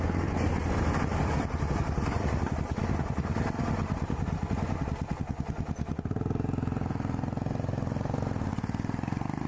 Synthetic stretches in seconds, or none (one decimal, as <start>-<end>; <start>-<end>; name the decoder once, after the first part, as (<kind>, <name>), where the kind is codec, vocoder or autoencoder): none